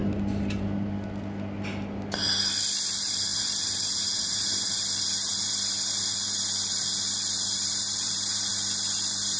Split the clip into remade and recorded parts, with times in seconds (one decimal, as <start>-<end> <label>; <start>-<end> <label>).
0.0-9.4 recorded

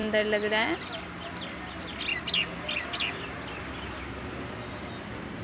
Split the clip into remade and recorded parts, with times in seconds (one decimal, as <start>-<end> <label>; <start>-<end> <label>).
0.0-5.4 recorded

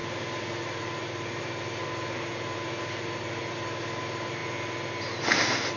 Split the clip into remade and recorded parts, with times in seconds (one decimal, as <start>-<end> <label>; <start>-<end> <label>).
0.0-5.8 recorded

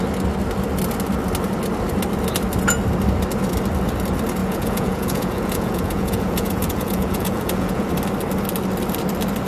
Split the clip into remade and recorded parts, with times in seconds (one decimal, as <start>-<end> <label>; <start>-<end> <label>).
0.0-4.4 recorded; 4.4-7.9 remade; 7.9-9.5 recorded

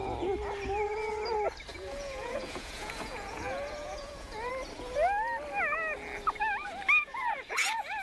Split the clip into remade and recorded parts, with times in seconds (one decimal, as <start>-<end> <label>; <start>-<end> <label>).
0.0-1.7 recorded; 1.7-4.5 remade; 4.5-7.1 recorded; 7.1-8.0 remade

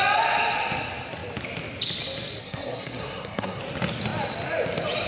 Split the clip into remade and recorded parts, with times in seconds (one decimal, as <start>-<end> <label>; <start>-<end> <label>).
0.0-2.4 recorded; 2.4-3.6 remade; 3.6-5.1 recorded